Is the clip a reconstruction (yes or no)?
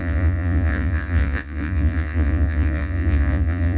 yes